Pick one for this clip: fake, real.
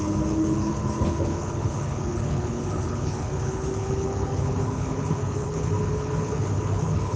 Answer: fake